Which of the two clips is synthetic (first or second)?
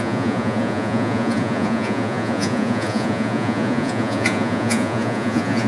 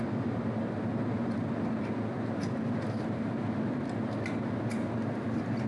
first